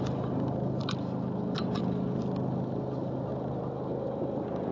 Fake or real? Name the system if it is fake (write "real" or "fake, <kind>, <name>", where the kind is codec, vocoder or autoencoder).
real